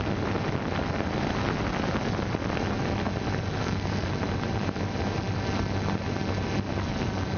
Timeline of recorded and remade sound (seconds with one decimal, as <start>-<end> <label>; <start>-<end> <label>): 0.0-3.6 recorded; 3.6-4.1 remade; 4.1-7.4 recorded